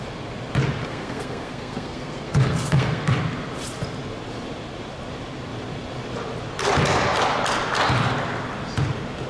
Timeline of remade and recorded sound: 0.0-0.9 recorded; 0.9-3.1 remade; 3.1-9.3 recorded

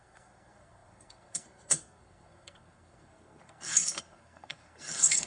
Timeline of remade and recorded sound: 0.0-5.3 remade

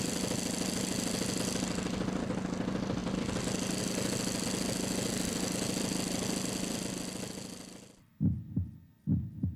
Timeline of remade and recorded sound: 0.0-9.6 recorded

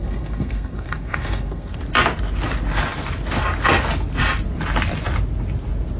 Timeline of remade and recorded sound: 0.0-1.8 remade; 1.8-6.0 recorded

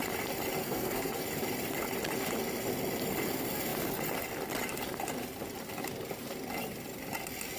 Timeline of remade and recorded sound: 0.0-0.6 recorded; 0.6-1.2 remade; 1.2-7.6 recorded